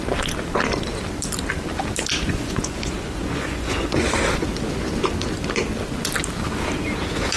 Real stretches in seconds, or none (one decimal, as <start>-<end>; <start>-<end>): 0.0-2.3; 4.1-7.4